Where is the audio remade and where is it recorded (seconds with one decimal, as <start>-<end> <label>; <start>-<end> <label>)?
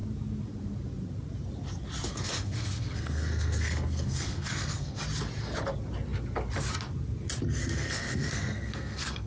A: 0.0-2.1 recorded; 2.1-5.0 remade; 5.0-7.6 recorded; 7.6-9.3 remade